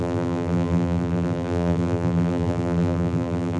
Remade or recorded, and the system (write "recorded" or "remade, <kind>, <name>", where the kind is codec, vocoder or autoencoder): remade, vocoder, BigVGAN v2